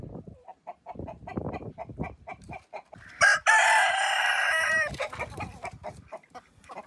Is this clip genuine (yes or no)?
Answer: no